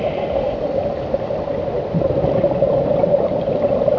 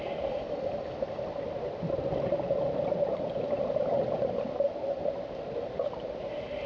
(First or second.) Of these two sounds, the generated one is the first